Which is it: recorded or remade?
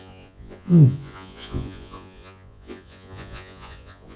remade